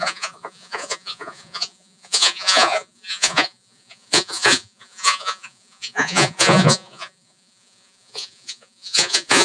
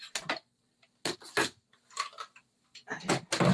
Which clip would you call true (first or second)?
second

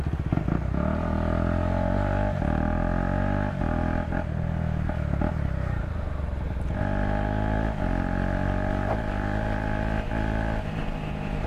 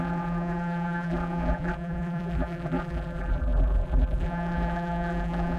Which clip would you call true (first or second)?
first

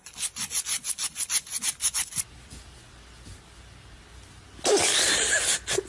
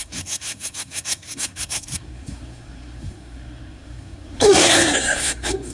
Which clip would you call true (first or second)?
first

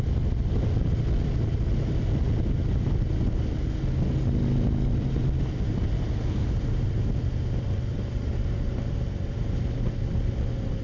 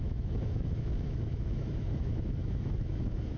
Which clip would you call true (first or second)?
first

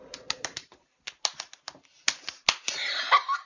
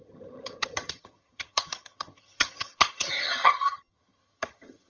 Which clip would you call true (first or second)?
first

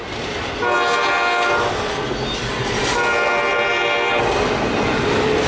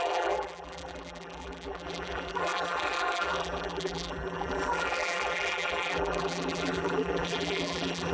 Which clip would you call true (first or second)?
first